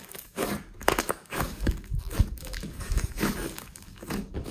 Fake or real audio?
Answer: fake